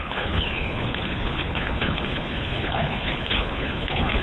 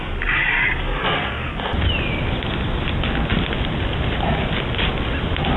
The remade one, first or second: first